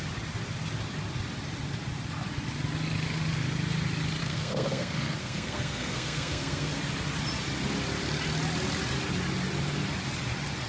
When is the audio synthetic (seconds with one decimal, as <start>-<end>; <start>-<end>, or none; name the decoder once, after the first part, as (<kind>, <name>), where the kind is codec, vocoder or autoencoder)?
4.2-6.8 (codec, SNAC)